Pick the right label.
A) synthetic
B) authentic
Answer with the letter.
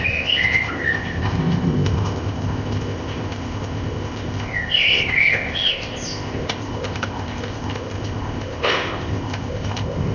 A